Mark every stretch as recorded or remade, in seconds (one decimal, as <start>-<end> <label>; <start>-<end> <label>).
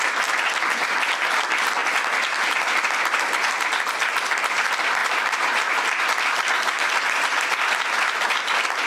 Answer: 0.0-5.0 recorded; 5.0-6.0 remade; 6.0-8.9 recorded